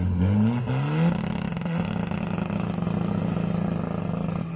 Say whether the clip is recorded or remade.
recorded